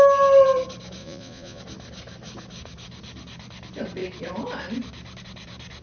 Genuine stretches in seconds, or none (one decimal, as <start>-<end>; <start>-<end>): 0.0-1.0; 1.6-5.8